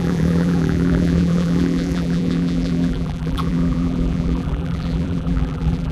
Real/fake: fake